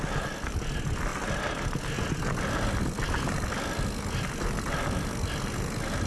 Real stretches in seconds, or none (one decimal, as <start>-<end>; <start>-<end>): 0.0-6.1

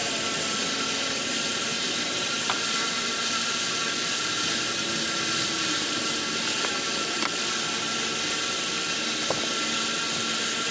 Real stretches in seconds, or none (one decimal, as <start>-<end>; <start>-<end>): 3.9-10.7

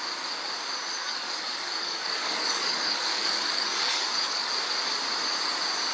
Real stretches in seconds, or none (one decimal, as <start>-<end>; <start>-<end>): 0.0-1.0; 4.5-5.9

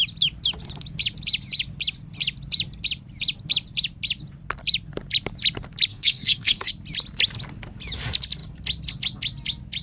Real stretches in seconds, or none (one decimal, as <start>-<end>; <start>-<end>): 0.0-5.9; 6.7-9.8

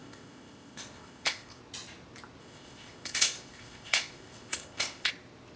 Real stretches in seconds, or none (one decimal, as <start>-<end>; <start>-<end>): 1.6-2.4; 5.1-5.6